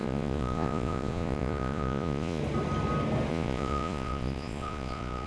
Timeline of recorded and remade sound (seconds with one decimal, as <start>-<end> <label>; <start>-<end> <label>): 0.0-2.4 remade; 2.4-3.3 recorded; 3.3-5.3 remade